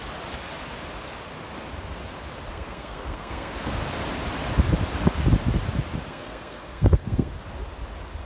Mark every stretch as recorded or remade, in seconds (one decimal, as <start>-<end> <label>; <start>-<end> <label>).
0.0-2.5 recorded; 2.5-3.7 remade; 3.7-6.1 recorded; 6.1-7.3 remade; 7.3-8.3 recorded